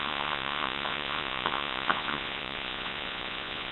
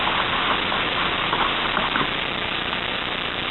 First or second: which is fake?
first